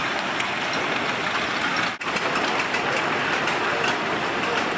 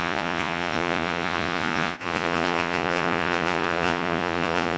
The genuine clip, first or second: first